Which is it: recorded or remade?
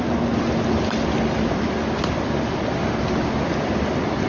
recorded